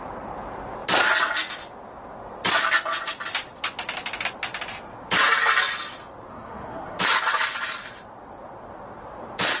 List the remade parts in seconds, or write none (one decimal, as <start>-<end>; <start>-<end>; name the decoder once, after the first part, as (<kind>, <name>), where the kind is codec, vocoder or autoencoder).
6.3-7.0 (codec, SNAC)